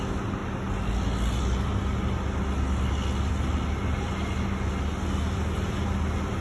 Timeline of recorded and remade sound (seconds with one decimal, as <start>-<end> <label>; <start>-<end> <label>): 0.0-6.4 recorded